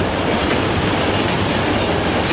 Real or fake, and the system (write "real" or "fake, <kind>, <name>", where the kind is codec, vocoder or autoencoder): real